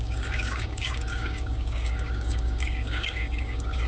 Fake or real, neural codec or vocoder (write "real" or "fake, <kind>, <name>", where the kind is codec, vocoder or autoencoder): fake, codec, DAC